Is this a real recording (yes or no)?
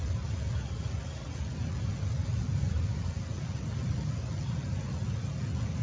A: yes